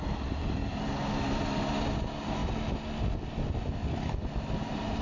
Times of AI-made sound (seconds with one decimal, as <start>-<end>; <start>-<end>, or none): 0.0-0.6; 1.2-2.4; 4.6-5.0

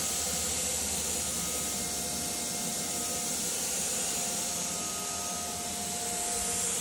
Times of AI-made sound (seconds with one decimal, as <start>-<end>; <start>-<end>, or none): none

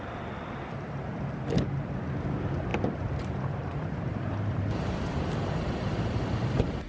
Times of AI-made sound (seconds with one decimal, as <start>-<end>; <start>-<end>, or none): 2.7-6.9

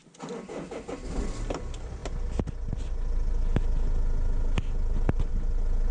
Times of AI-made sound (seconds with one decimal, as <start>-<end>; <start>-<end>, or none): none

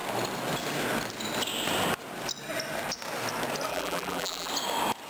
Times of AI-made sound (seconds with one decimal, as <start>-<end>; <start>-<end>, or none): 3.7-4.5

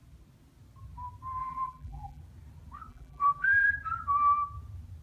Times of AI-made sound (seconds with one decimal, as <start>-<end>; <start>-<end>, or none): 1.4-2.2; 2.9-3.7